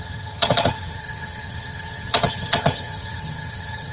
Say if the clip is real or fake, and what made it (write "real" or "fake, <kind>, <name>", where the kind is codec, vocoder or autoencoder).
fake, vocoder, HiFi-GAN